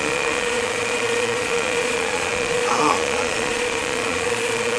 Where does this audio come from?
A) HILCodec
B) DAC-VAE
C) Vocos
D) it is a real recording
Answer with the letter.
C